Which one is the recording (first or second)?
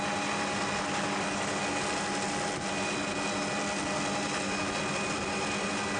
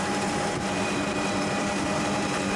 first